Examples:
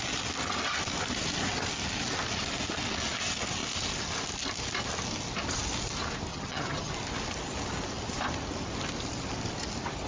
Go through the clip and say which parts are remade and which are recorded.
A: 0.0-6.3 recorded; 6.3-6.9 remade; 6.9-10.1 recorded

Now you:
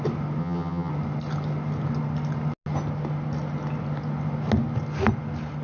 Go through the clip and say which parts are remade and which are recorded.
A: 0.0-0.4 recorded; 0.4-0.9 remade; 0.9-5.6 recorded

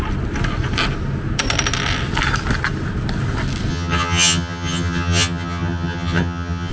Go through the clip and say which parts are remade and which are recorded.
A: 0.0-3.7 recorded; 3.7-6.7 remade